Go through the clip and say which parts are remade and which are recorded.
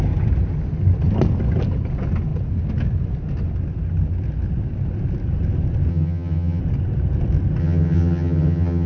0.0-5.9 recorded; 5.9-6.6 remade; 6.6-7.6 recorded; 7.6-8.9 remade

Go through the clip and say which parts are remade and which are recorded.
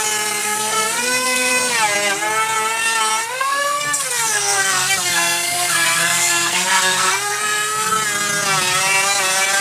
0.0-0.4 recorded; 0.4-1.7 remade; 1.7-3.2 recorded; 3.2-7.9 remade; 7.9-9.6 recorded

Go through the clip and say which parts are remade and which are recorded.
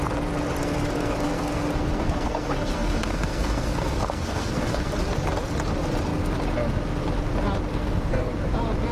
0.0-0.6 recorded; 0.6-4.9 remade; 4.9-7.7 recorded; 7.7-8.3 remade; 8.3-8.9 recorded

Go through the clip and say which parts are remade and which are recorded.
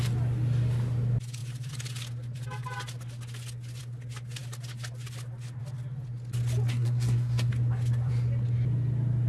0.0-6.7 recorded; 6.7-7.5 remade; 7.5-9.3 recorded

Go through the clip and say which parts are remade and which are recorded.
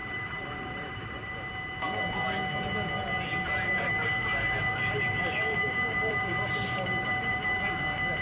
0.0-1.4 remade; 1.4-3.3 recorded; 3.3-7.6 remade; 7.6-8.2 recorded